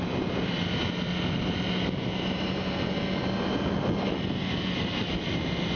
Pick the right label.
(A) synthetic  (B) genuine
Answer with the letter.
B